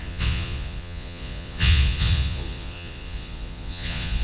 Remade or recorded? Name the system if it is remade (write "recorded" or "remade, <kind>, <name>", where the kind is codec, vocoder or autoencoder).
remade, vocoder, Vocos